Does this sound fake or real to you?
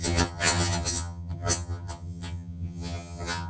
fake